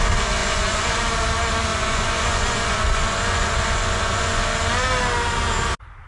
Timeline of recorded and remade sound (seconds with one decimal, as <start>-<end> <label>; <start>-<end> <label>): 0.0-0.4 recorded; 0.4-1.0 remade; 1.0-1.7 recorded; 1.7-4.4 remade; 4.4-6.1 recorded